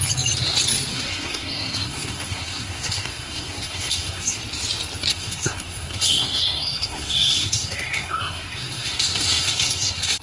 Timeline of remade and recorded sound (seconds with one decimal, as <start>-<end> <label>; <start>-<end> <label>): 0.0-0.9 recorded; 0.9-4.4 remade; 4.4-5.1 recorded; 5.1-10.2 remade